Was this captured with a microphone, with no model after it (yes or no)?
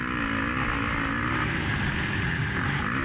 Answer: yes